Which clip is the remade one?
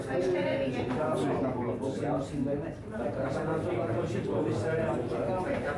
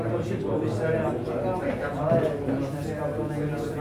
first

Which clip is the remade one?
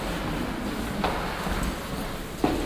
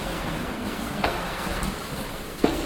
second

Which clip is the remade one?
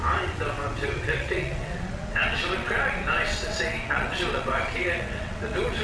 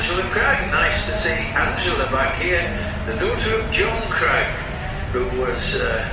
first